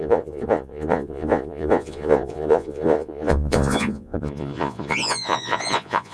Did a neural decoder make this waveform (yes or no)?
yes